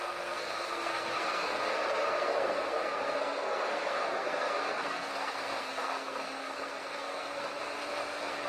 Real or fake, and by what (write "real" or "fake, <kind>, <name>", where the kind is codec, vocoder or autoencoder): fake, codec, SNAC